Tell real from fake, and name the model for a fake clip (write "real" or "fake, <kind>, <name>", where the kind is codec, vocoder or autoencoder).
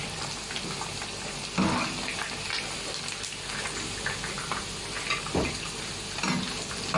real